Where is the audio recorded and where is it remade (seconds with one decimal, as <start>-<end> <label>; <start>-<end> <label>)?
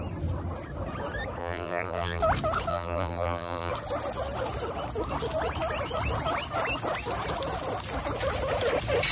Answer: 0.0-1.4 recorded; 1.4-2.2 remade; 2.2-2.7 recorded; 2.7-3.7 remade; 3.7-9.1 recorded